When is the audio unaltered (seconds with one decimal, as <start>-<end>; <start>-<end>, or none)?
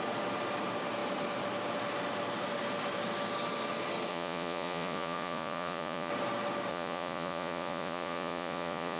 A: 0.0-4.1; 6.1-6.7